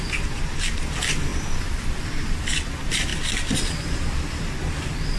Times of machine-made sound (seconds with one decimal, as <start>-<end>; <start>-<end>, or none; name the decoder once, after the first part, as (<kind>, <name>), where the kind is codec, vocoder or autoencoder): none